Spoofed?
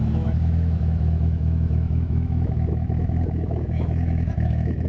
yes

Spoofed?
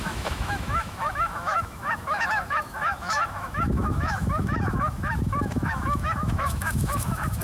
yes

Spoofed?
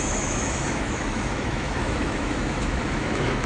yes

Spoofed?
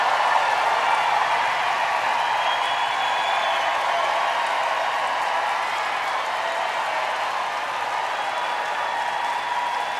no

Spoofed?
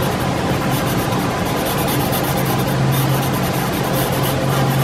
no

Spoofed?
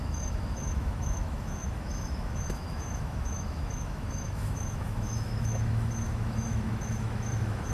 yes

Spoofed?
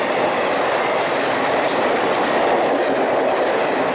no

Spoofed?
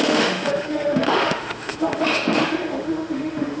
yes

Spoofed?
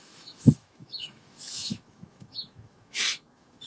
yes